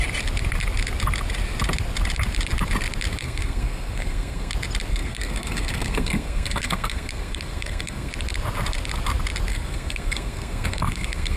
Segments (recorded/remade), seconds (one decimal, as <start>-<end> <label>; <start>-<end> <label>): 0.0-3.2 recorded; 3.2-4.5 remade; 4.5-4.9 recorded; 4.9-8.1 remade; 8.1-9.5 recorded; 9.5-11.4 remade